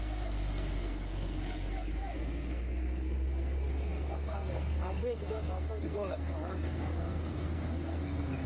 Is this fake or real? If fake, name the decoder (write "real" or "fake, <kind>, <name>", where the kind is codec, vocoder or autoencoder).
fake, codec, SNAC